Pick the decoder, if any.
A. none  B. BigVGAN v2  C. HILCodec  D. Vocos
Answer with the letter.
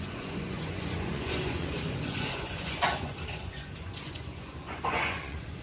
D